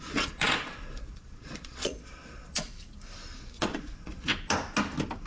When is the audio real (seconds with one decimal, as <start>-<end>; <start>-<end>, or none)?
2.7-3.4; 4.3-5.3